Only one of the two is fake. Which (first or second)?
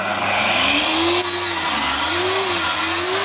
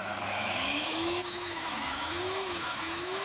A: second